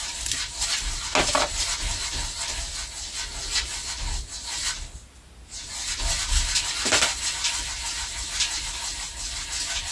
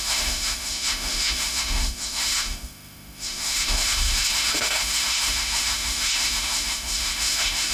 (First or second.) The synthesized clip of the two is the second